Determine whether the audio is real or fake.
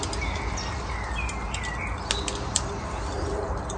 real